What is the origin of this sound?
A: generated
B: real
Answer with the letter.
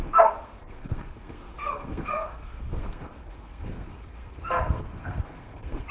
A